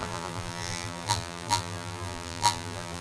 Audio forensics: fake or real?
fake